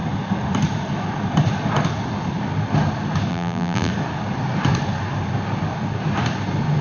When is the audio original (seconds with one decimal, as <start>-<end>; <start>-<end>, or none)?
0.0-3.3; 3.9-6.8